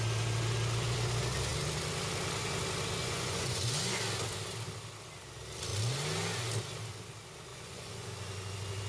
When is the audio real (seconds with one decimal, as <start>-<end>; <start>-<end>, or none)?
0.0-3.0; 4.0-7.5; 8.1-8.9